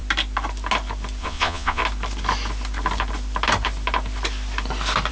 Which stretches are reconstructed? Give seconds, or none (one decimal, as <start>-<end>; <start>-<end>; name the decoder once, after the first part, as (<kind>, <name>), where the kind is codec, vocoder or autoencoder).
1.2-1.8 (vocoder, Vocos)